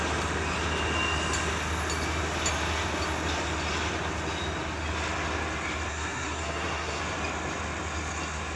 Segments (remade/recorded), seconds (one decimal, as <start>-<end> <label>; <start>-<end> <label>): 0.0-5.9 recorded; 5.9-7.0 remade; 7.0-8.6 recorded